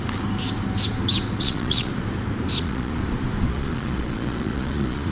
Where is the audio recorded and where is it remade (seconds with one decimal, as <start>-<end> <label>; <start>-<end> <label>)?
0.0-1.4 recorded; 1.4-1.9 remade; 1.9-2.6 recorded; 2.6-3.0 remade; 3.0-3.5 recorded; 3.5-5.1 remade